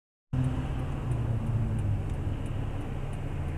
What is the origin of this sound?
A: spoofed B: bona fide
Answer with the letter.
B